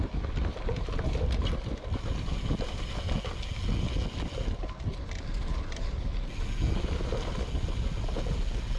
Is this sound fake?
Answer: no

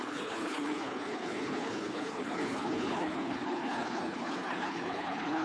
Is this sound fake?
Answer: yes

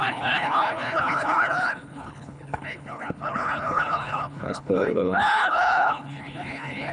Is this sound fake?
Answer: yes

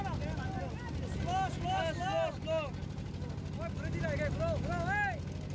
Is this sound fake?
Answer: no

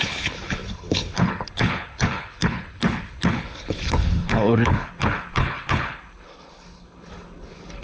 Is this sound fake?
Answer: yes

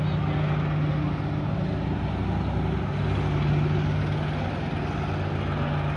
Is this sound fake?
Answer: no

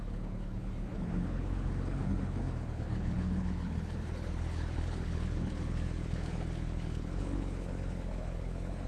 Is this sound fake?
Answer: yes